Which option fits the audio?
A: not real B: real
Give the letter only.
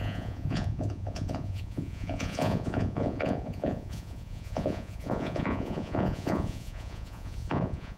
A